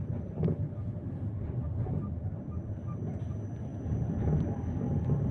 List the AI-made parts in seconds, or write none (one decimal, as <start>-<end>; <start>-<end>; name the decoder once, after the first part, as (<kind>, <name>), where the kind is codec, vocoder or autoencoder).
none